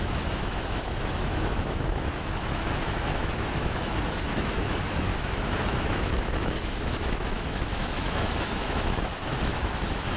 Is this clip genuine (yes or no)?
no